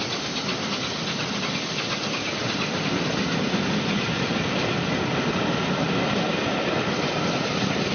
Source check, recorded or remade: recorded